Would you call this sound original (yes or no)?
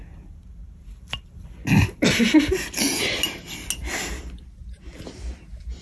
yes